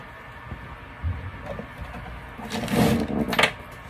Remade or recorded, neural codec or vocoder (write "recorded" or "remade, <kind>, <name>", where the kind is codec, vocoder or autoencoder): recorded